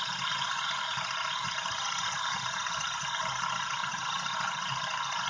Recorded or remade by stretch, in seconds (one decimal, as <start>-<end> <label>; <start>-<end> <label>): 0.0-5.3 recorded